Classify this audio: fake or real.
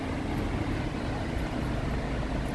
real